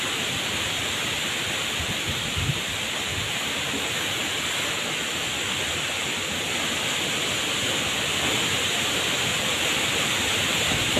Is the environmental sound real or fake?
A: fake